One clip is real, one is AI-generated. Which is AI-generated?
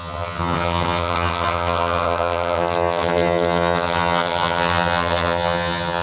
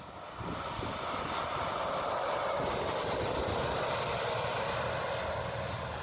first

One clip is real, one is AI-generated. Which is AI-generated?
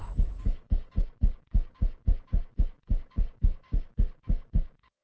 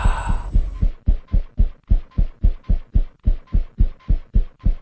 first